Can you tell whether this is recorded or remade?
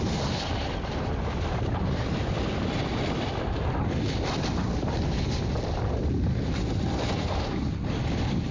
recorded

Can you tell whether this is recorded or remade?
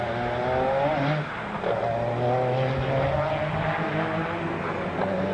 recorded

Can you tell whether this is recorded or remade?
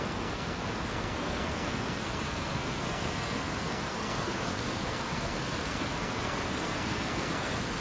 remade